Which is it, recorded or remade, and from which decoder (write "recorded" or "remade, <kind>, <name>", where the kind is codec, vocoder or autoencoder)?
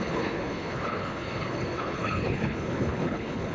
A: remade, codec, HILCodec